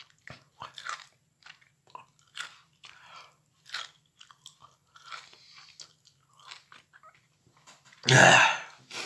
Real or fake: real